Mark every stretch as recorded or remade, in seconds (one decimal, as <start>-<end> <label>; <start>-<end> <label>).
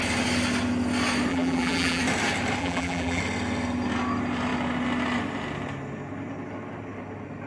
0.0-1.3 recorded; 1.3-2.0 remade; 2.0-2.6 recorded; 2.6-3.2 remade; 3.2-7.5 recorded